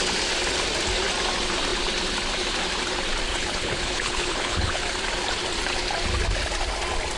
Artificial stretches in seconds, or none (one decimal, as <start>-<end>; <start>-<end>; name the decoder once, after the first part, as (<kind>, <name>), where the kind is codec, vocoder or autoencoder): 3.3-4.8 (codec, HILCodec)